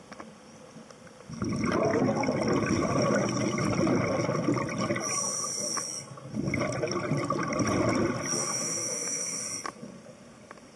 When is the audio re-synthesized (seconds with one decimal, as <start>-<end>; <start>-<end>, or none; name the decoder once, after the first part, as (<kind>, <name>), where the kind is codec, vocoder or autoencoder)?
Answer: 8.4-9.4 (autoencoder, DAC-VAE)